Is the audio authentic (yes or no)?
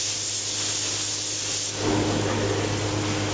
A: yes